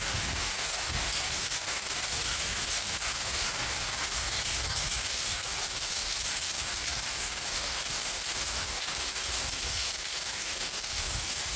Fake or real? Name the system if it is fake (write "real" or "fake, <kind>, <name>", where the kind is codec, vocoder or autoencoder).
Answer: fake, codec, DAC